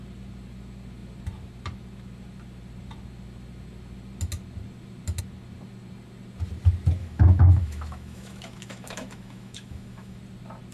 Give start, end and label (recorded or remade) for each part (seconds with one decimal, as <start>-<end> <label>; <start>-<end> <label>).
0.0-7.0 recorded; 7.0-10.2 remade; 10.2-10.7 recorded